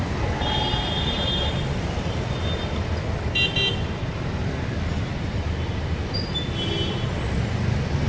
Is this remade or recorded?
recorded